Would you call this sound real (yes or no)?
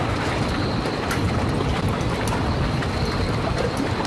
yes